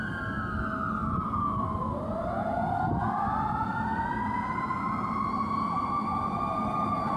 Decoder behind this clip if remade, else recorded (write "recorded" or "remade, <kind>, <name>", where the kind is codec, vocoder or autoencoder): recorded